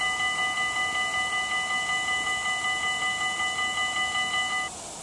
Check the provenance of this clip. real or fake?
real